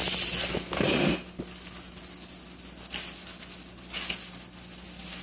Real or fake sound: real